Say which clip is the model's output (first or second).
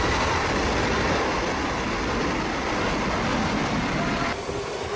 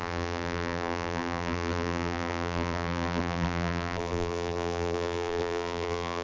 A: second